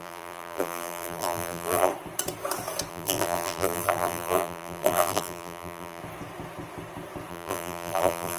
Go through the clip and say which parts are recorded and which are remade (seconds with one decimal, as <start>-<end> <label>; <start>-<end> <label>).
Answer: 0.0-1.9 remade; 1.9-2.9 recorded; 2.9-6.0 remade; 6.0-7.3 recorded; 7.3-8.4 remade